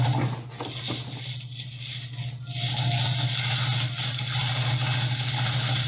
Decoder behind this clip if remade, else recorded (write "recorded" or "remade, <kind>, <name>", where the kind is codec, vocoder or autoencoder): recorded